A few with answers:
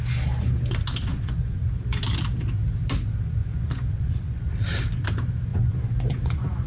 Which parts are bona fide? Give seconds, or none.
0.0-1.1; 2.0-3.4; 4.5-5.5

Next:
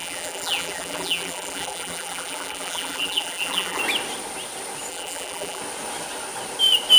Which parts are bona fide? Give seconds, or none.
3.8-4.9; 5.6-7.0